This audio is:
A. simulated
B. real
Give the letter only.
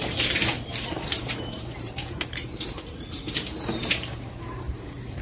A